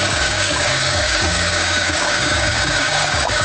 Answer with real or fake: fake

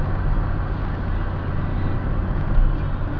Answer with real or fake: real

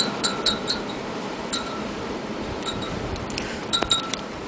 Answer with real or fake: fake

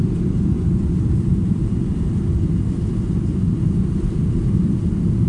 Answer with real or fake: real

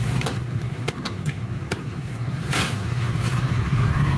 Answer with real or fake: fake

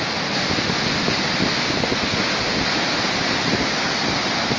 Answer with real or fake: real